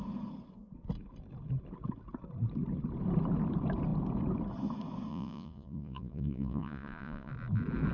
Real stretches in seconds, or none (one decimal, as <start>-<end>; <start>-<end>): 0.0-5.1; 7.3-7.9